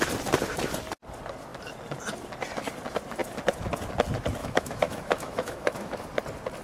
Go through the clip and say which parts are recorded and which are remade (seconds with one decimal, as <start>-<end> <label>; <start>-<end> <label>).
0.0-4.4 recorded; 4.4-6.0 remade; 6.0-6.6 recorded